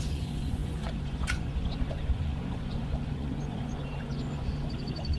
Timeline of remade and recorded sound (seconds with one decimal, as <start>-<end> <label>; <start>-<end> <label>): 0.0-5.2 remade